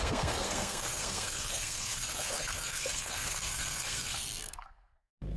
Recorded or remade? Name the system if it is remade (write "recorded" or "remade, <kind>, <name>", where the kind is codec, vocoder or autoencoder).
remade, codec, SNAC